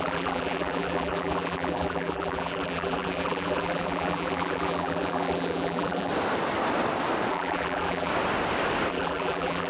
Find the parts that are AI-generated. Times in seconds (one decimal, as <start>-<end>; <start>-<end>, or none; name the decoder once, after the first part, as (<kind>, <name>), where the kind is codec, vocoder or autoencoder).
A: 0.0-6.1 (vocoder, BigVGAN v2); 7.3-8.1; 8.9-9.7